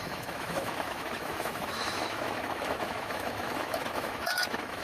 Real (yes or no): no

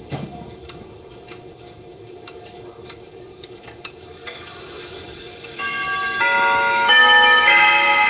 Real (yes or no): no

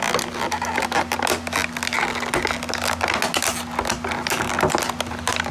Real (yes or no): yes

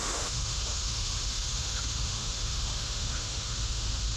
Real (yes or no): no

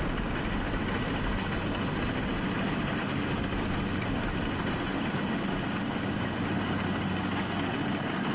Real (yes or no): yes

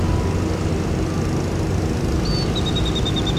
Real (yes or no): yes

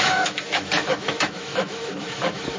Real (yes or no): no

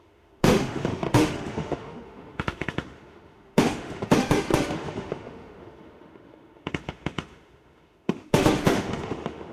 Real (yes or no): no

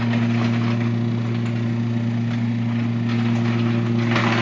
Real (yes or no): yes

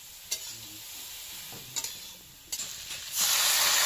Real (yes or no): yes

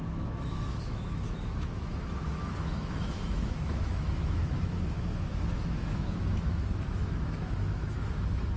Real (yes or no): no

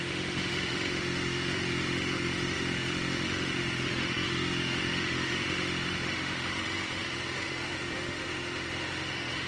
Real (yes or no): no